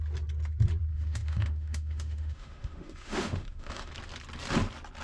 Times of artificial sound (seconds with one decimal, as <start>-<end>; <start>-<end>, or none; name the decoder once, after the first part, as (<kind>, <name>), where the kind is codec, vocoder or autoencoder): 0.9-3.9 (autoencoder, DAC-VAE)